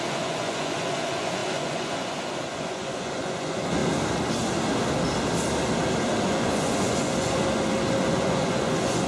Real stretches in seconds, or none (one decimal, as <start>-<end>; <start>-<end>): 3.8-6.2